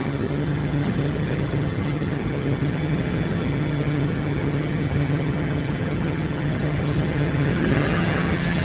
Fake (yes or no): yes